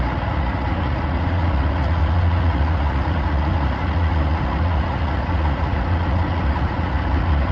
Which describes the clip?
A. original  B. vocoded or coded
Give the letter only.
B